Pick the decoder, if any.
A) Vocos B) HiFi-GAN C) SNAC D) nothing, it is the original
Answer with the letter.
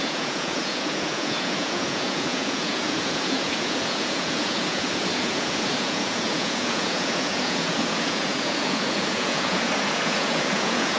A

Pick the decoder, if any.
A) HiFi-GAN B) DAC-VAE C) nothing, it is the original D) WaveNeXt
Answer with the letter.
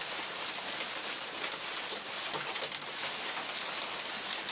C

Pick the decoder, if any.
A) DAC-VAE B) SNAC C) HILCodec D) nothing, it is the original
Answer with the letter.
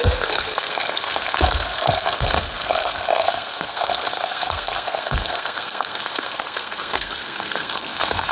B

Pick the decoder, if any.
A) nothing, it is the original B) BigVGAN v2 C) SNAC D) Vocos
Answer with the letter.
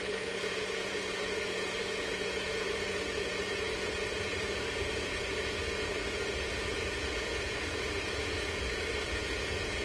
D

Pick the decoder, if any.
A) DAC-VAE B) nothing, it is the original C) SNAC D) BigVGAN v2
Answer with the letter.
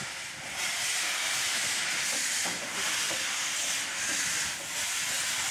B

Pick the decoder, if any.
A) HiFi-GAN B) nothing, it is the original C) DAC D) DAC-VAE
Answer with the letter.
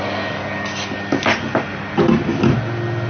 B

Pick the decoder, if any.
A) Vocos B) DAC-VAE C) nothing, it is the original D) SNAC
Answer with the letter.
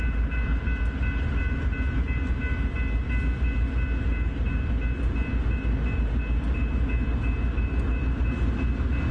C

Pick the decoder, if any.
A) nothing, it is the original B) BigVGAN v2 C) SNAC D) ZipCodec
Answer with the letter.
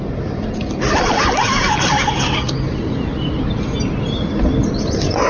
A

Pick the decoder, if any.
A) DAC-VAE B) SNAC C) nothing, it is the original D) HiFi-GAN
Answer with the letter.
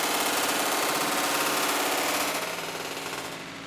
C